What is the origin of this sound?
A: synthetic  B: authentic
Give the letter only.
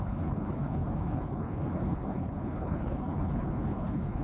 A